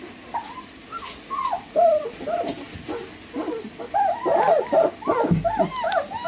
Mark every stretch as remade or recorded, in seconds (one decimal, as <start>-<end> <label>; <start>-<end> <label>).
0.0-0.4 recorded; 0.4-1.8 remade; 1.8-6.3 recorded